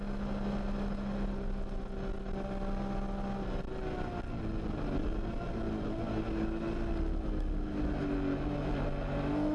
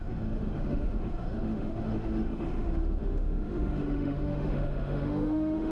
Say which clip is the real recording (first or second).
first